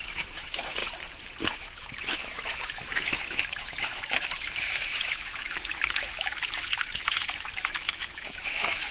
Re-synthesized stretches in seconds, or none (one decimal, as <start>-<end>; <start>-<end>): 0.0-0.8; 1.4-8.9